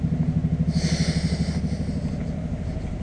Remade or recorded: recorded